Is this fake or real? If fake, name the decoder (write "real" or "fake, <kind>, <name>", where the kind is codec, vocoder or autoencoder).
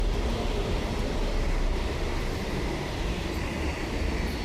fake, vocoder, BigVGAN v2